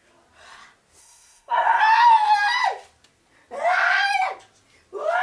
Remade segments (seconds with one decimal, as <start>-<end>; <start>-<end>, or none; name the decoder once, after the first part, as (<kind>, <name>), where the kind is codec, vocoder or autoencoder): 1.0-1.8 (codec, SNAC)